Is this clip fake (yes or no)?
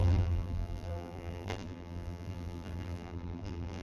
yes